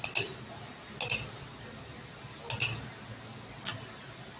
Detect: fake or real real